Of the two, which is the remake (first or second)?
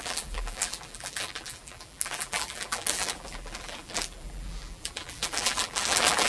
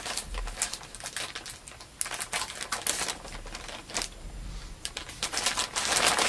first